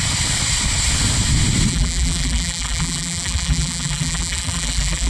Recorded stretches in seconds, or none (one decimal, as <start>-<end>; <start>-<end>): 0.0-1.7